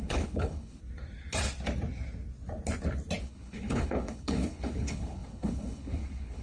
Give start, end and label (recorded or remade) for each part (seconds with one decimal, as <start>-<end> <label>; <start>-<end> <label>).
0.0-0.8 remade; 0.8-3.2 recorded; 3.2-6.4 remade